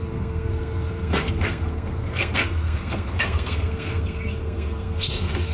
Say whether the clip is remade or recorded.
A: remade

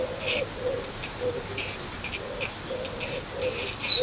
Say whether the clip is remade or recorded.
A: recorded